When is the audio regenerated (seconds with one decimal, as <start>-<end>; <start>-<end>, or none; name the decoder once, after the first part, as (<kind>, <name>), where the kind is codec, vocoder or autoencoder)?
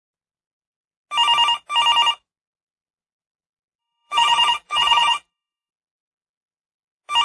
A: 3.8-5.7 (vocoder, BigVGAN v2)